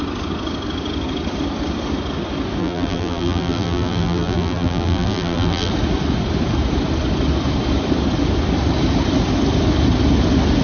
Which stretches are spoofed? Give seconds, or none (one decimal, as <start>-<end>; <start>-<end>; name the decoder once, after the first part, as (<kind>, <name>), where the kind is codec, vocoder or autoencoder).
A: 2.6-5.7 (vocoder, BigVGAN v2)